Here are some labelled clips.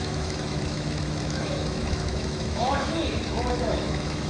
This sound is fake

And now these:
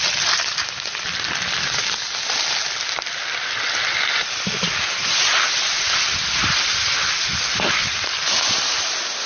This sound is real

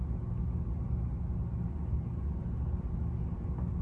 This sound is real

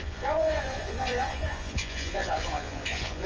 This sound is fake